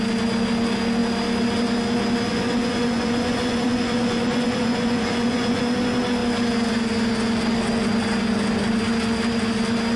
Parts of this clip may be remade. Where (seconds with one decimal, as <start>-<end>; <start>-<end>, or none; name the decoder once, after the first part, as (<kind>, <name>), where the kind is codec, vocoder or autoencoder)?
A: 2.3-5.6 (vocoder, Vocos)